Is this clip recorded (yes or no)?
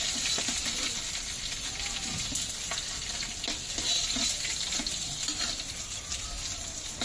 yes